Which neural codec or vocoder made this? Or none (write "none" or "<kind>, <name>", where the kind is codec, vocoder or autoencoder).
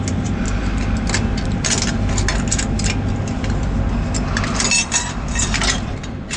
none